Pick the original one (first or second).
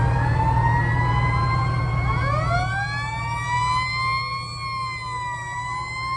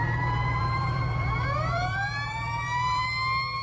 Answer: first